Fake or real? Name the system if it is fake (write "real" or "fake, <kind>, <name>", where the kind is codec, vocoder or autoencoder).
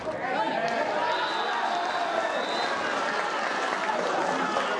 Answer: real